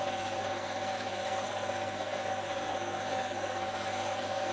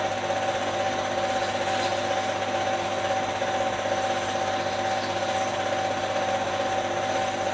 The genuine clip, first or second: second